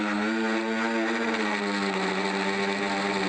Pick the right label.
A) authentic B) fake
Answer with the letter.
A